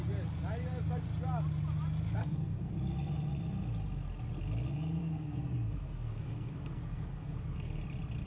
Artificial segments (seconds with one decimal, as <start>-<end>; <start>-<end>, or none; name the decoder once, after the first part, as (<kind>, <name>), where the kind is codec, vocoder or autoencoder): 2.2-2.7 (codec, SNAC); 5.0-7.8